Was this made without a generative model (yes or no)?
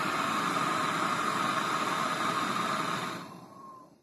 no